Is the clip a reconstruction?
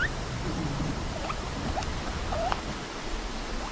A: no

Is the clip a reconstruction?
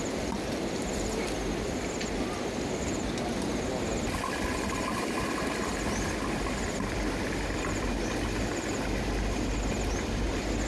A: no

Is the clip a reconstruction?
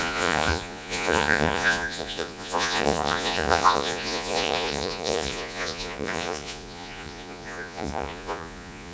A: yes